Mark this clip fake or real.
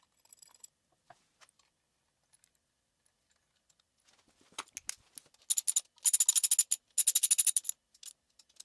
real